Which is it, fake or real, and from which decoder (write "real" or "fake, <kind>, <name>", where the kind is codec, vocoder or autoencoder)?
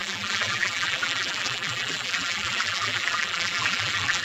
fake, vocoder, BigVGAN v2